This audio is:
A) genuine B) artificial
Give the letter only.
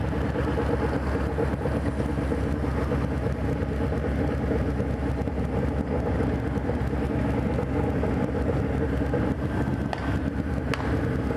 A